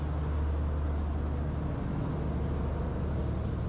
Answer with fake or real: real